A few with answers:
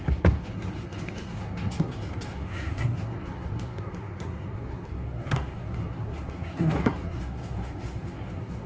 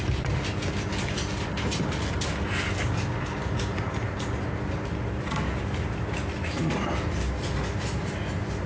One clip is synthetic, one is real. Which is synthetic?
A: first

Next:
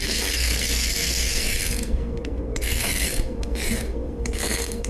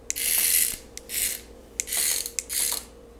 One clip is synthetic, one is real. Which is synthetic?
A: first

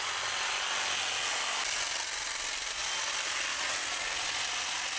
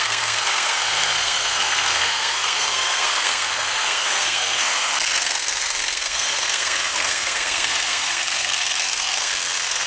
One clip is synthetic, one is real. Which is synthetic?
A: second